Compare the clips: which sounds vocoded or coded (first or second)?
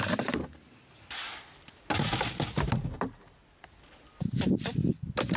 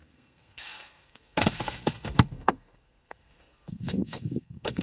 second